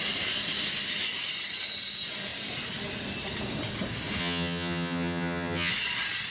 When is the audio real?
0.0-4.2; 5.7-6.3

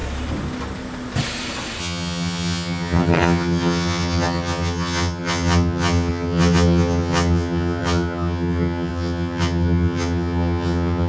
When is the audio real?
0.0-1.8